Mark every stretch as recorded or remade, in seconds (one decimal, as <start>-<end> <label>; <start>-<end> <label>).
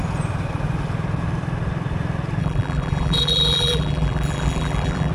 0.0-2.4 recorded; 2.4-5.1 remade